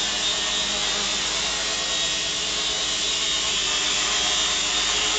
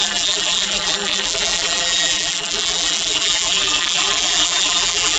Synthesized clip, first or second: second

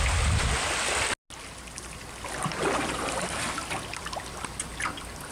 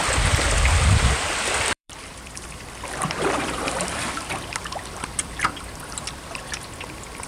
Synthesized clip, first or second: second